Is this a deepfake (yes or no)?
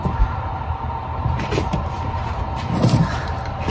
yes